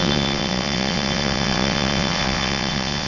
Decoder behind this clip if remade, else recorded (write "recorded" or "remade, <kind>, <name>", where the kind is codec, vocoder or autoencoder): remade, vocoder, WaveNeXt